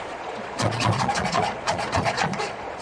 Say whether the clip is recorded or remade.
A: remade